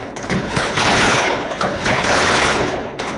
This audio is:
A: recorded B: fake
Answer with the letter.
B